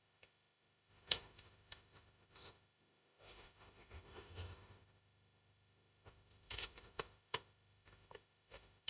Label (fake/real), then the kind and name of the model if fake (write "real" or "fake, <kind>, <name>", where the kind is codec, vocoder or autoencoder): fake, autoencoder, DAC-VAE